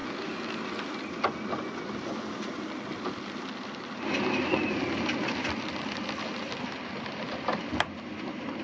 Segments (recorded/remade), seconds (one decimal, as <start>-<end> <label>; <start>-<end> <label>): 0.0-8.6 recorded